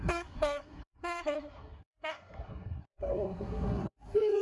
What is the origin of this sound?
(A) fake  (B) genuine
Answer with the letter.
A